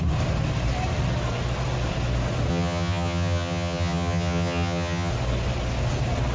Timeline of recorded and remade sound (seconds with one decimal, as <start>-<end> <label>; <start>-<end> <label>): 0.0-2.5 recorded; 2.5-5.1 remade; 5.1-6.3 recorded